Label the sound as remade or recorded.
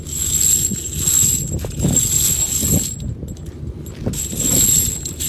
recorded